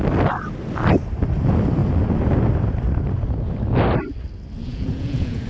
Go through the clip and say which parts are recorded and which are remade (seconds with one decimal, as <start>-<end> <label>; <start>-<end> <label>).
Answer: 0.0-4.6 recorded; 4.6-5.5 remade